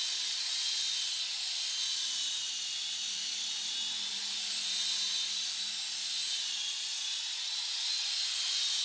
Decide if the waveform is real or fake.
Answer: real